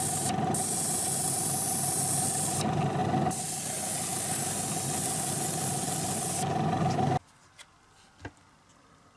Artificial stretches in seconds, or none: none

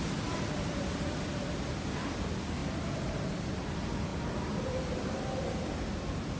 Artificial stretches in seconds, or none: 4.1-5.5 (vocoder, BigVGAN v2)

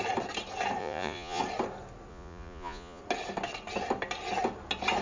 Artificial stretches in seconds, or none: 0.8-1.4 (vocoder, Vocos); 2.1-3.0

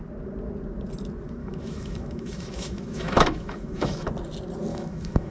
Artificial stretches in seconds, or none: 1.4-4.1 (autoencoder, DAC-VAE); 4.7-5.3

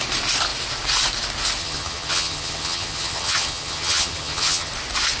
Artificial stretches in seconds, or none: 1.6-4.7 (vocoder, HiFi-GAN)

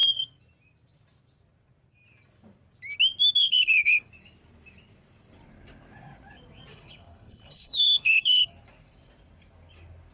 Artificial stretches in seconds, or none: 3.4-4.1 (codec, HILCodec); 6.7-8.5

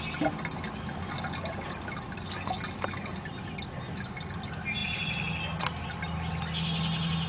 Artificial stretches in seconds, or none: none